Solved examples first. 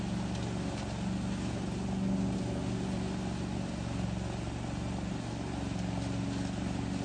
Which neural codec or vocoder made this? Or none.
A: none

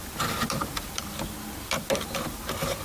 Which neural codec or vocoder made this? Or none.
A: none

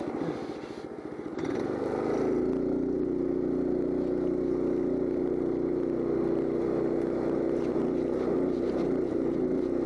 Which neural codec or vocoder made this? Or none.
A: none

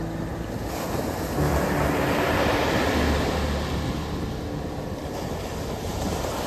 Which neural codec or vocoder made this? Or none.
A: none